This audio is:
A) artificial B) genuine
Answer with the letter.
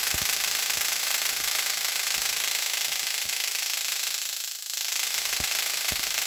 A